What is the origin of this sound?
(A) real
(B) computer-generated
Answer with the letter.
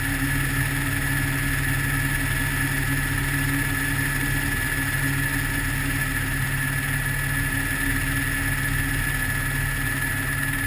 A